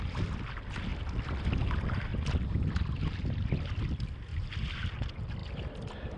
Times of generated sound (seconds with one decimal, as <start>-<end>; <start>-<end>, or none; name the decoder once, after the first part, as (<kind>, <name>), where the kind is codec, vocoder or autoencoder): 0.9-1.6 (vocoder, BigVGAN v2); 2.1-3.1; 4.3-4.8